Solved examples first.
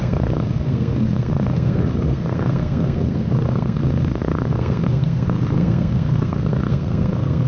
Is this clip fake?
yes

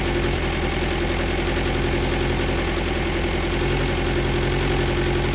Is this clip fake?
no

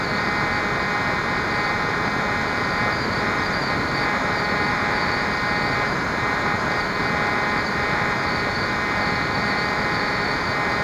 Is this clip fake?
yes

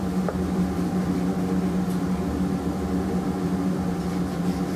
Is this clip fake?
no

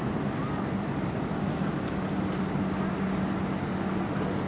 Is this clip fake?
no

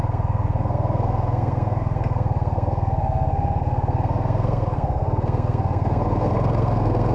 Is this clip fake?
yes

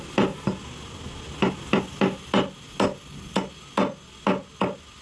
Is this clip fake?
no